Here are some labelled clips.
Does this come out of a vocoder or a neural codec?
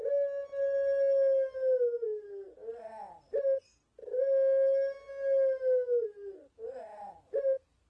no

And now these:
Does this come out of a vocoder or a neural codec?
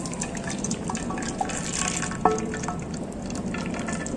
no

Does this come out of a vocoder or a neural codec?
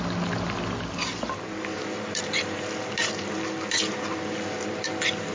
no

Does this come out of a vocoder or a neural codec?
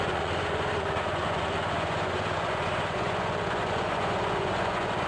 yes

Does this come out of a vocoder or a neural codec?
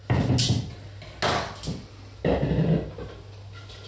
no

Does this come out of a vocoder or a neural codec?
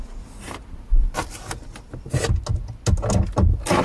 no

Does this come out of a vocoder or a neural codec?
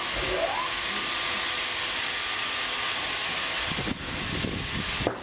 no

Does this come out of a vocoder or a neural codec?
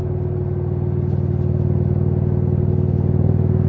no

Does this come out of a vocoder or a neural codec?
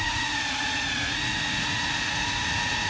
yes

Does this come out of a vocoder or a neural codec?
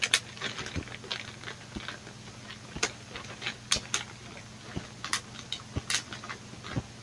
no